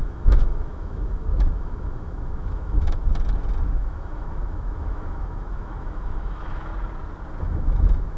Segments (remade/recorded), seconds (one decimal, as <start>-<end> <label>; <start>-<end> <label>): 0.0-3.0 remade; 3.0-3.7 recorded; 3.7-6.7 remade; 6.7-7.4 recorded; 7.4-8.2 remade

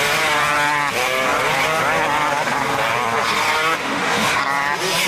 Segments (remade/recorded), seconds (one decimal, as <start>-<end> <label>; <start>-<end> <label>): 0.0-3.8 recorded; 3.8-4.4 remade; 4.4-5.1 recorded

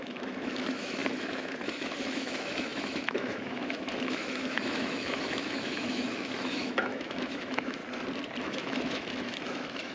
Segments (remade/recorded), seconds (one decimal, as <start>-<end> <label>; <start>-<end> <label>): 0.0-7.8 remade; 7.8-8.4 recorded; 8.4-9.9 remade

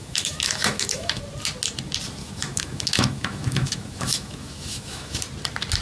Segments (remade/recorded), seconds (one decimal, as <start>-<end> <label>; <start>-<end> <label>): 0.0-1.2 remade; 1.2-2.2 recorded; 2.2-5.2 remade; 5.2-5.8 recorded

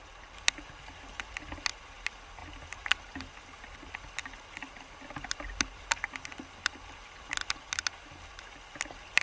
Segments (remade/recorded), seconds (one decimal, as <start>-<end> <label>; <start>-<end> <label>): 0.0-9.2 recorded

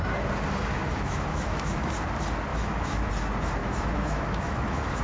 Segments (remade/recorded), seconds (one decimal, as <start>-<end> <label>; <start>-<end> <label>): 0.0-0.7 recorded; 0.7-1.9 remade; 1.9-2.5 recorded; 2.5-3.1 remade; 3.1-3.6 recorded; 3.6-5.0 remade

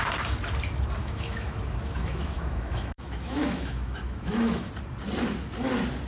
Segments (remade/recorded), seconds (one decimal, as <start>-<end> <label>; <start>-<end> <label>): 0.0-1.0 recorded; 1.0-4.7 remade; 4.7-6.1 recorded

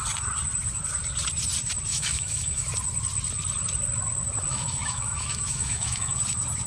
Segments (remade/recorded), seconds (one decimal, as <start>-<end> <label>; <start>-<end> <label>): 0.0-1.9 recorded; 1.9-2.7 remade; 2.7-4.5 recorded; 4.5-6.2 remade; 6.2-6.7 recorded